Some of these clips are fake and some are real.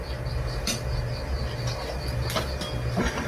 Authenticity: real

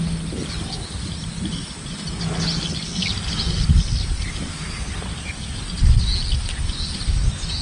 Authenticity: real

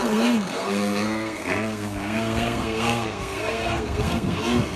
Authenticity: fake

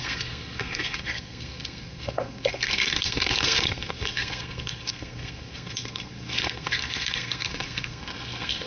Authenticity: fake